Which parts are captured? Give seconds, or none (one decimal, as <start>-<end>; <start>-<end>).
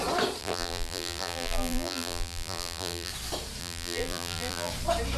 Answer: 0.0-0.4; 3.1-3.6; 4.7-5.2